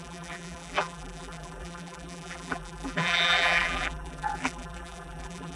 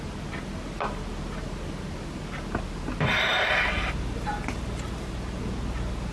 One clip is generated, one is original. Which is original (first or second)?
second